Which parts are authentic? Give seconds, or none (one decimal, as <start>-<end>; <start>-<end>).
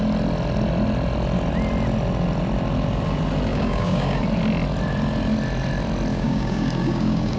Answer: 0.0-3.5; 4.2-6.1